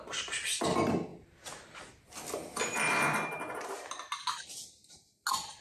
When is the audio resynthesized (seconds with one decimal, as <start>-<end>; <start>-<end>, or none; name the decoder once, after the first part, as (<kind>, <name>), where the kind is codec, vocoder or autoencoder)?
none